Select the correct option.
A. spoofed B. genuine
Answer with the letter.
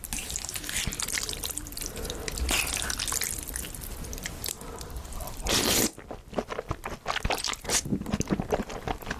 B